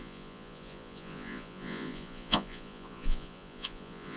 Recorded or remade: remade